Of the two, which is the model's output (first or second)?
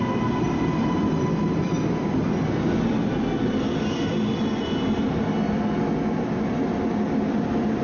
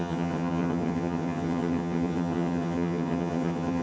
second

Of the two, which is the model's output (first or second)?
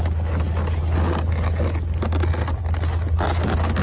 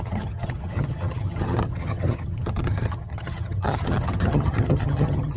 second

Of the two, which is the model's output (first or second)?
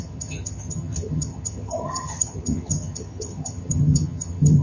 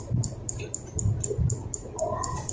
first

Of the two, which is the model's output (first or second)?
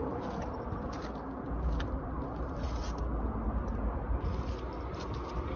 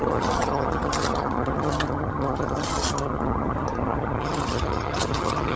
second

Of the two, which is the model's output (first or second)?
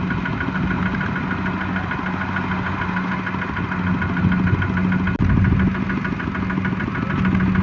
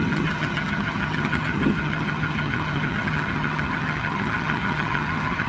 second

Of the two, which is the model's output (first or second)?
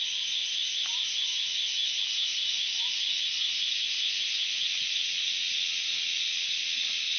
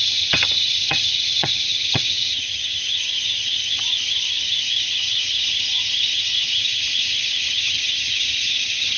second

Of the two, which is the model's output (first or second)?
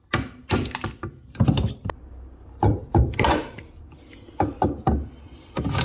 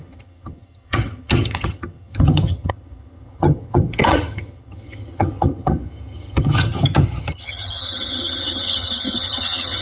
second